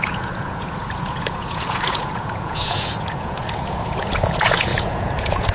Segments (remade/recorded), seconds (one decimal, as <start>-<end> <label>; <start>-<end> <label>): 0.0-5.5 remade